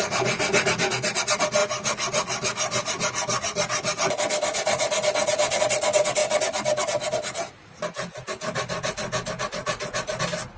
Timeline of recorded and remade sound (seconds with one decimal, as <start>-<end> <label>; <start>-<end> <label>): 0.0-10.6 recorded